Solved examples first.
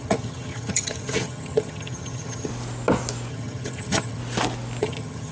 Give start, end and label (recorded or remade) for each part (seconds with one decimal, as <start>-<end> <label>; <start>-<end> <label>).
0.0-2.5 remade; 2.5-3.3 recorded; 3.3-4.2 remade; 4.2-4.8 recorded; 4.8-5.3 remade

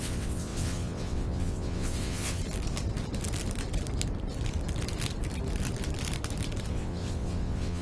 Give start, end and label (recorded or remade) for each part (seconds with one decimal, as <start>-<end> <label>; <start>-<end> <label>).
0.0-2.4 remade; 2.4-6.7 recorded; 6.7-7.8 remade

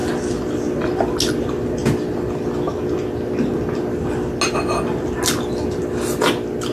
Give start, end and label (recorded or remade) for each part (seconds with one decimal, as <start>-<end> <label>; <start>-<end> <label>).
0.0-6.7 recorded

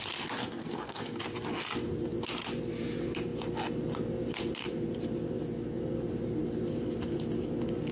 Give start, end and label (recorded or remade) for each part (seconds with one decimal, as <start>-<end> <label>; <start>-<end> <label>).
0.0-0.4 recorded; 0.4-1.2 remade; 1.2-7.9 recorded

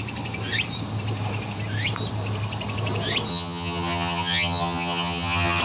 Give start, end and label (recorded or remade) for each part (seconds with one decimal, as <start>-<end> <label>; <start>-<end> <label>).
0.0-3.3 recorded; 3.3-5.6 remade